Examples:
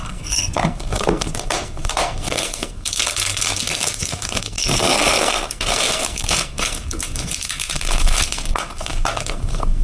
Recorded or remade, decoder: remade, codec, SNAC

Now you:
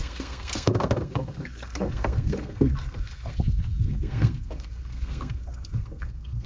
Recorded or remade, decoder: remade, codec, SNAC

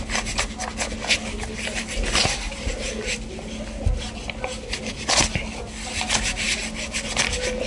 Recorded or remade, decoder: recorded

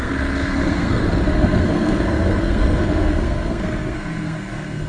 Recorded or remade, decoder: remade, codec, SNAC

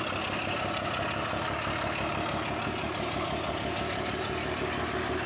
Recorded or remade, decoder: recorded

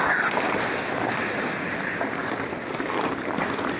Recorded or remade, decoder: recorded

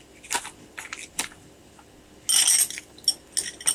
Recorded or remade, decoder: recorded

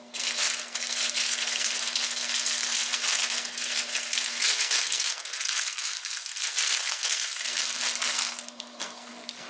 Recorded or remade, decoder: remade, codec, SNAC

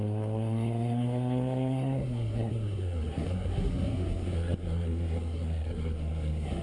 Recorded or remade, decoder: remade, codec, SNAC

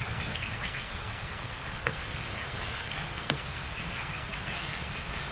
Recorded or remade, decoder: remade, codec, SNAC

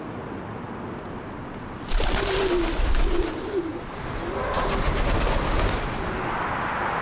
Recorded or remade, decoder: recorded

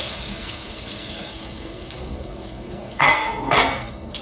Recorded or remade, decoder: remade, codec, SNAC